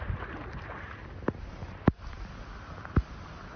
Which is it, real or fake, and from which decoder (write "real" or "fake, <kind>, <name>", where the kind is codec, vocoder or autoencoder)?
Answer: real